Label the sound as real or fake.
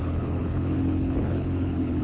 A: fake